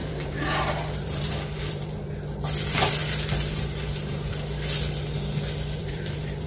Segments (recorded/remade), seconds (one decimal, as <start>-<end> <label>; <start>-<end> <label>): 0.0-2.1 remade; 2.1-3.0 recorded; 3.0-4.3 remade; 4.3-5.8 recorded; 5.8-6.5 remade